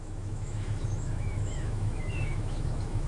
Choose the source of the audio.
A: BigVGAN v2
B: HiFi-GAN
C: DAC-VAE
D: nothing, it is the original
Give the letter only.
C